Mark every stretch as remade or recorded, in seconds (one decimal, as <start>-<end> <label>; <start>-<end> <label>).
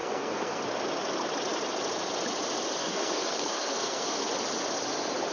0.0-0.6 remade; 0.6-2.8 recorded; 2.8-4.3 remade; 4.3-5.3 recorded